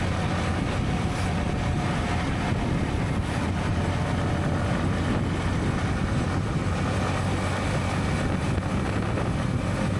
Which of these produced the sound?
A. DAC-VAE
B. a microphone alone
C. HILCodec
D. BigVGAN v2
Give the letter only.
B